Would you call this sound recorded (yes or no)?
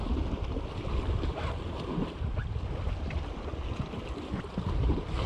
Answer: yes